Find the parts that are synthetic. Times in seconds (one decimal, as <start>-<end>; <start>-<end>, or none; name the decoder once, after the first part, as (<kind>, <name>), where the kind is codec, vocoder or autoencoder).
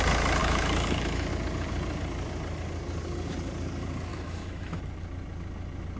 0.4-1.3 (autoencoder, DAC-VAE); 4.1-4.8